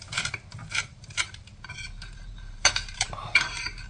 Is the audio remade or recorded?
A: remade